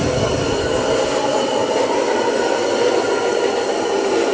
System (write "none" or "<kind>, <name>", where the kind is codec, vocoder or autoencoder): none